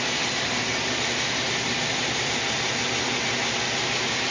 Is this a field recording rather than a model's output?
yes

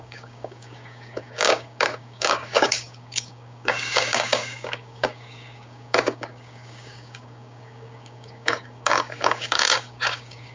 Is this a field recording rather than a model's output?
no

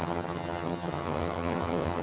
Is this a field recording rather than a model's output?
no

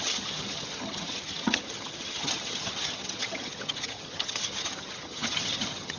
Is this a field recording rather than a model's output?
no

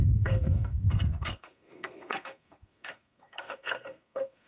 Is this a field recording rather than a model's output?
no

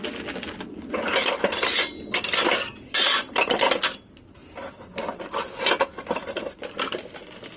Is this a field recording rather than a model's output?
yes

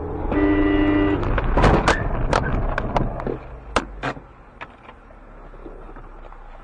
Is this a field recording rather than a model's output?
yes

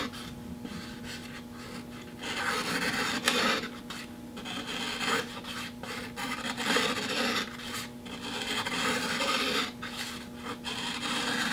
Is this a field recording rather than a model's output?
yes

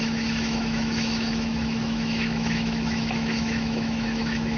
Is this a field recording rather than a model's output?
no